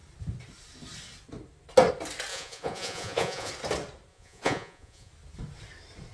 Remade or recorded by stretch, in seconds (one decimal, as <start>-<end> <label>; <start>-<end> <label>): 0.0-2.3 recorded; 2.3-3.5 remade; 3.5-4.1 recorded; 4.1-5.1 remade; 5.1-6.1 recorded